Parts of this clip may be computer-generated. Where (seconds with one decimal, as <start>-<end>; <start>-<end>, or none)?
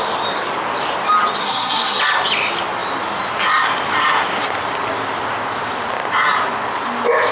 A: 1.4-2.0